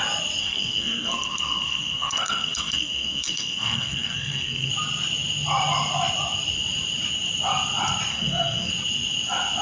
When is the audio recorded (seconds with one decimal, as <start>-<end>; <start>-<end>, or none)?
0.0-0.4; 4.7-8.1; 8.7-9.6